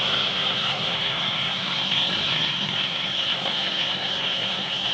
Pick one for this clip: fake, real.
fake